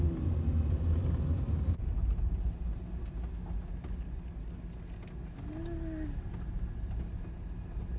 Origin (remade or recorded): recorded